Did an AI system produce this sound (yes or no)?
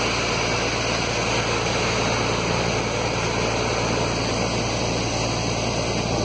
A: no